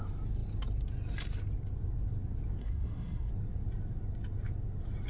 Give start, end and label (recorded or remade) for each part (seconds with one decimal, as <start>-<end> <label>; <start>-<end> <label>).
0.0-2.6 recorded; 2.6-3.3 remade; 3.3-5.1 recorded